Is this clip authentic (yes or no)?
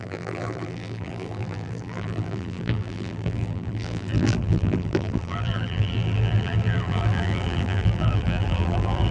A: no